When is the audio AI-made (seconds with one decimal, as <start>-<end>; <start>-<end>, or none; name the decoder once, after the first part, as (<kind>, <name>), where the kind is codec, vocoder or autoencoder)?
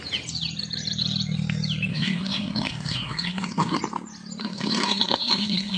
1.9-3.8 (codec, SNAC); 4.4-5.8